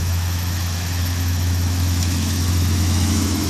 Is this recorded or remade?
remade